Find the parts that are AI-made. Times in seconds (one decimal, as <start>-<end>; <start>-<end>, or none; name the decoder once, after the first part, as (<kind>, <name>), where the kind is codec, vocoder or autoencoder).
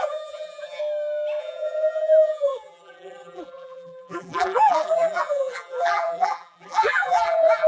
0.0-0.8 (vocoder, BigVGAN v2); 1.4-7.7